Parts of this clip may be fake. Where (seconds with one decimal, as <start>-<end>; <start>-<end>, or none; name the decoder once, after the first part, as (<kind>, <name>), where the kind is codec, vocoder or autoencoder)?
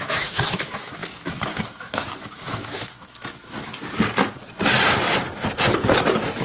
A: 0.0-3.8 (autoencoder, DAC-VAE)